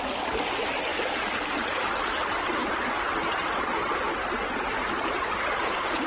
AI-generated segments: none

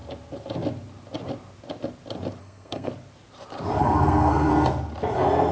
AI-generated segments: 2.4-2.9 (codec, SNAC); 3.8-4.5

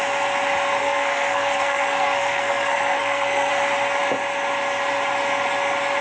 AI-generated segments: 0.8-3.5 (codec, SNAC)

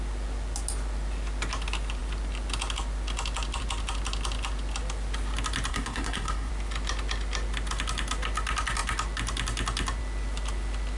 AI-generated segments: 5.7-6.5 (codec, SNAC)